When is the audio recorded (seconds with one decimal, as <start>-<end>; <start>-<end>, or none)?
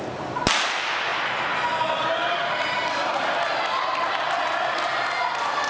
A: 0.0-5.7